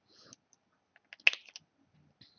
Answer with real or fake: real